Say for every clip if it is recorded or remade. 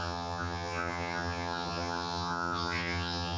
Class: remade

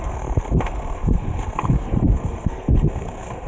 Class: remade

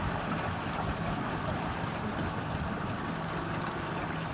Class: recorded